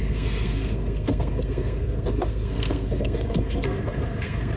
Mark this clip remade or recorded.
remade